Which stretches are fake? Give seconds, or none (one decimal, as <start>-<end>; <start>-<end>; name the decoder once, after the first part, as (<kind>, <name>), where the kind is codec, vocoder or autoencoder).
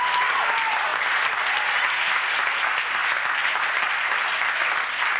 none